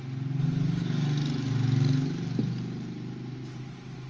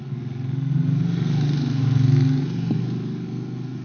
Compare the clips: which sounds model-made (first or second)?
second